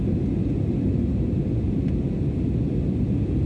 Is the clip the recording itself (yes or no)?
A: yes